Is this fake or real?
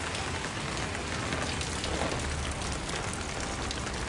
real